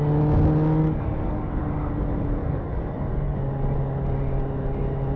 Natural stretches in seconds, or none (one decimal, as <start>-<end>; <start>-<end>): 0.0-0.8; 1.6-2.4; 3.5-5.2